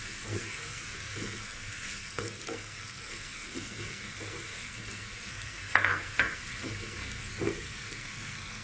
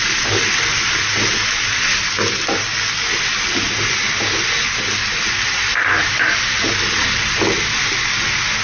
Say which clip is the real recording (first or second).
second